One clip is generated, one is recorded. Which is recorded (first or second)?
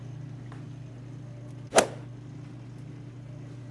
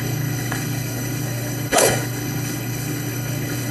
first